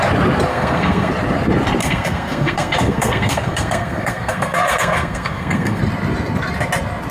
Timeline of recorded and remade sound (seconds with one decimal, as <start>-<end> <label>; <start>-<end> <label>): 0.0-0.5 recorded; 0.5-1.1 remade; 1.1-1.8 recorded; 1.8-5.8 remade; 5.8-7.1 recorded